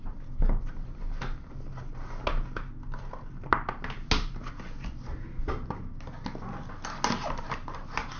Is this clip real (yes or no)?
yes